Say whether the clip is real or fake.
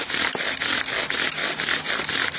real